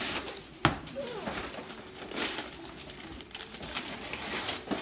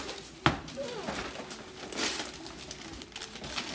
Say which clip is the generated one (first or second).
first